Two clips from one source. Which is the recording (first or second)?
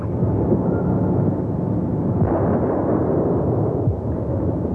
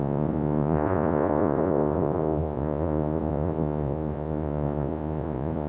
first